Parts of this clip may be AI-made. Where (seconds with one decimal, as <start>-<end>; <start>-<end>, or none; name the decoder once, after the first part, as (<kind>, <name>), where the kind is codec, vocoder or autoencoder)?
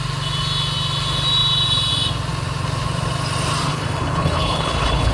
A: 3.7-5.1 (codec, HILCodec)